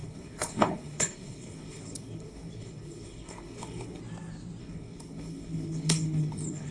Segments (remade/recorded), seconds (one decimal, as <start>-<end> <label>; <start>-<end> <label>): 0.0-4.0 remade; 4.0-4.6 recorded; 4.6-6.7 remade